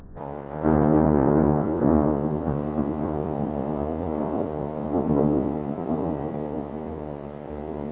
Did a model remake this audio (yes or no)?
yes